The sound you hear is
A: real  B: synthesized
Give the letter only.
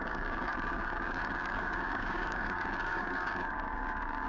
B